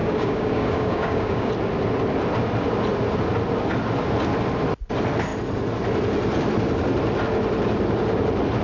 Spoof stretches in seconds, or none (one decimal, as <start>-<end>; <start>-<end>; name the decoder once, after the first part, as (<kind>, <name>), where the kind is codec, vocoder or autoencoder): 0.0-1.5 (codec, DAC)